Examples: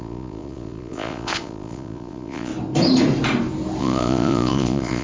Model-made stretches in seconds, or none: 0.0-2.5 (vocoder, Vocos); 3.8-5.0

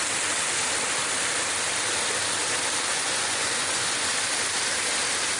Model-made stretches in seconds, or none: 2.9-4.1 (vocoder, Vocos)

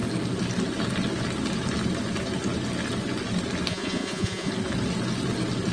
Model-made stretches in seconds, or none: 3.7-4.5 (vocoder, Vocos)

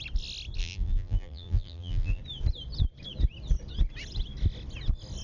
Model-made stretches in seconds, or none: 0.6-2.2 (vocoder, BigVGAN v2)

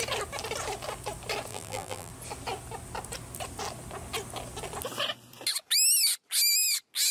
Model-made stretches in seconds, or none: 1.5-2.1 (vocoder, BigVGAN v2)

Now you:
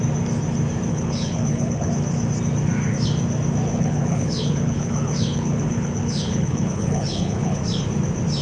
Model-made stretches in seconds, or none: 0.9-1.9 (codec, HILCodec); 3.7-7.6